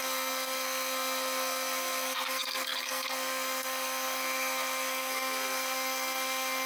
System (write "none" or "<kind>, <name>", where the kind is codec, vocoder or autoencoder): codec, SNAC